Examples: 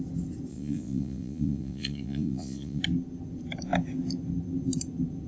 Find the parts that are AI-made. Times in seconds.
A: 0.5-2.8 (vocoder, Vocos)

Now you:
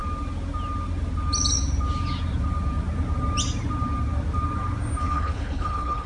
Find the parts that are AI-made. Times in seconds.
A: 5.0-6.1 (codec, HILCodec)